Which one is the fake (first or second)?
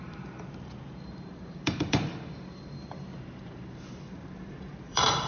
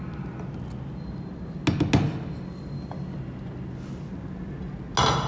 first